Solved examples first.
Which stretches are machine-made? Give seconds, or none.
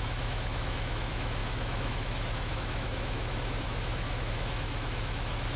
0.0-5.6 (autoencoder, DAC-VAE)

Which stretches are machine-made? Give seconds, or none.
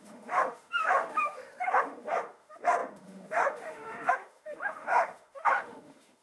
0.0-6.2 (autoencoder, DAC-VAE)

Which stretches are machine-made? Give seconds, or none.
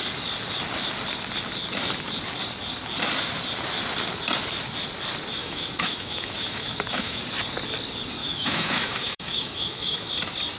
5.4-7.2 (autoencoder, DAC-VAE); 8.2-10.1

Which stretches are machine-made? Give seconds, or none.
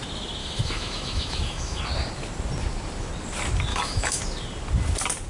0.4-1.8 (autoencoder, DAC-VAE); 3.7-4.2